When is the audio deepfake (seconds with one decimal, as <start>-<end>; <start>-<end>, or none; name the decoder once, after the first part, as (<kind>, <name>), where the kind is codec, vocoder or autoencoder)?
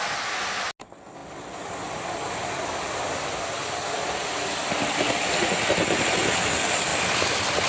none